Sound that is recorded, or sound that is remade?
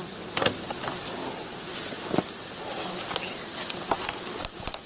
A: recorded